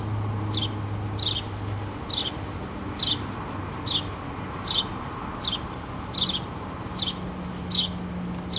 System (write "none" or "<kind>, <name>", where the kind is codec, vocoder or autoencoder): none